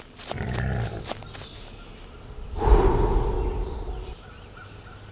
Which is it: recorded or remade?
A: recorded